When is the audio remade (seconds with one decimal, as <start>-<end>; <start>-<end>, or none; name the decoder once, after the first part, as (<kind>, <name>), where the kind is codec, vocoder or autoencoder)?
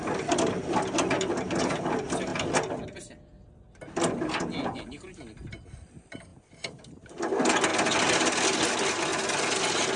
none